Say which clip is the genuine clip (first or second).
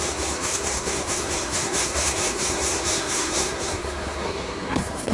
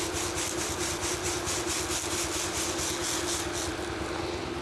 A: second